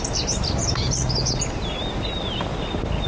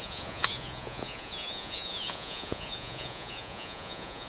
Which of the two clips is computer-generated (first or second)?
second